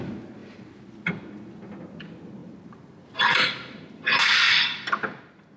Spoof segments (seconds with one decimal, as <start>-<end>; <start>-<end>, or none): 0.4-1.3; 2.4-4.0